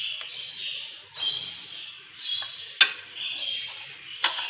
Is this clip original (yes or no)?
yes